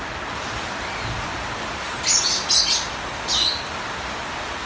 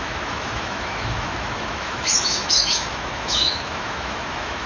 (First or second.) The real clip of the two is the first